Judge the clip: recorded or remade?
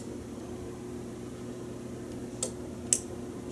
recorded